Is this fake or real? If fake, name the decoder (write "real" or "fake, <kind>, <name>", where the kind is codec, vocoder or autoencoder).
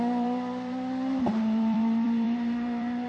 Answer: fake, vocoder, BigVGAN v2